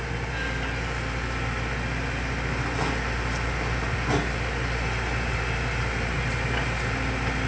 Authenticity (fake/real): real